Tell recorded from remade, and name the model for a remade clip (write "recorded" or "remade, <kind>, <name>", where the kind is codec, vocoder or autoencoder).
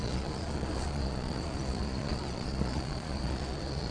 remade, vocoder, Vocos